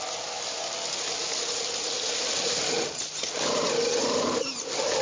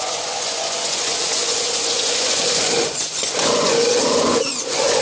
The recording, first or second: first